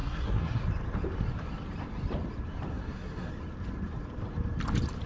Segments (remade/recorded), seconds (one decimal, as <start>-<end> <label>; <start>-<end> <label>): 0.0-0.6 remade; 0.6-2.7 recorded; 2.7-3.3 remade; 3.3-5.1 recorded